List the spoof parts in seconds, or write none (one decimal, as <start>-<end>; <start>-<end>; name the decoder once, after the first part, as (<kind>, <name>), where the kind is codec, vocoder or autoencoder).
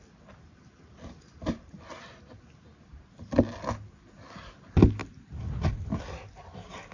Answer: 5.0-6.0 (vocoder, BigVGAN v2)